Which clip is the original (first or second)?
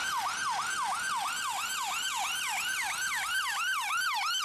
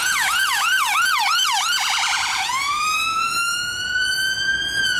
first